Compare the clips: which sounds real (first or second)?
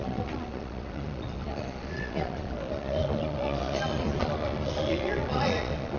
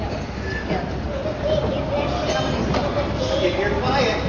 second